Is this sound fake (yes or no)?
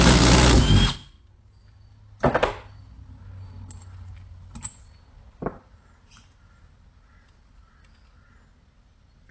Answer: no